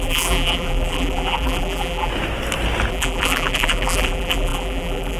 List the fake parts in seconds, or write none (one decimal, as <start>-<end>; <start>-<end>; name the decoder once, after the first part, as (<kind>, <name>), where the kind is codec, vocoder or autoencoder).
0.0-2.1 (vocoder, BigVGAN v2); 2.9-5.2

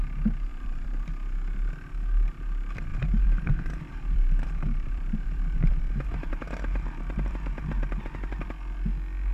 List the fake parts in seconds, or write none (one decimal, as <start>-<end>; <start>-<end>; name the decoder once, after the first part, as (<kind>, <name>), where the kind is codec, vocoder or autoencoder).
0.5-1.1 (vocoder, BigVGAN v2); 2.9-8.0

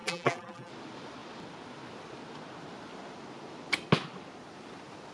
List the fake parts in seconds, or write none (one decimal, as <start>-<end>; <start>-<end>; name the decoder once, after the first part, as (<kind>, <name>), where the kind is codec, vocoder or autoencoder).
0.0-0.7 (vocoder, BigVGAN v2)

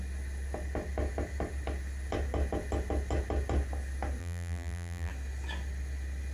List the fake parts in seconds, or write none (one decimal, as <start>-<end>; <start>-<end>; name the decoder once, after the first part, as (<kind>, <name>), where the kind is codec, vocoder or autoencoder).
4.2-5.1 (vocoder, BigVGAN v2)

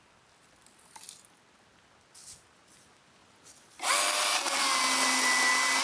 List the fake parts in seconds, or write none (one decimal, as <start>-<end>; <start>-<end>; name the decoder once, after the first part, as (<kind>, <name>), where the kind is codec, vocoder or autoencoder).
none